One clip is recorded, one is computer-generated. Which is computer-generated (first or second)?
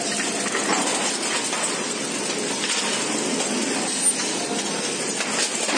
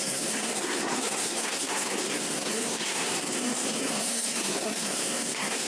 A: second